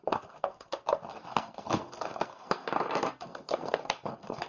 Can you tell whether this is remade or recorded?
remade